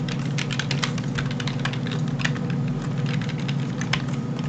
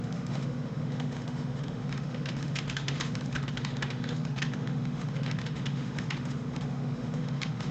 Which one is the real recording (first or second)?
first